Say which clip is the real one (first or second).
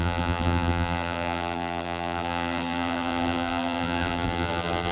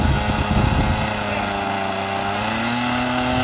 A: second